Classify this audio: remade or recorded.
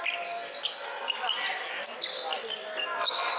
recorded